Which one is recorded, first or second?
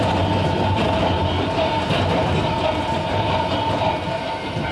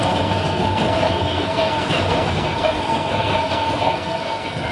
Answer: first